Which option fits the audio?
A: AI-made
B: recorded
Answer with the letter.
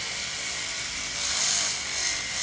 B